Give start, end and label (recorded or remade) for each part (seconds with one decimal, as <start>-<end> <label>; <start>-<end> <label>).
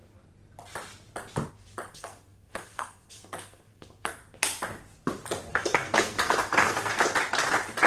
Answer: 0.0-1.9 recorded; 1.9-4.2 remade; 4.2-5.5 recorded; 5.5-7.0 remade; 7.0-7.9 recorded